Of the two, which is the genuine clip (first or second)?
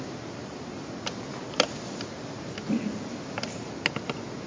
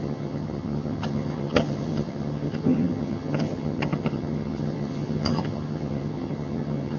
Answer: first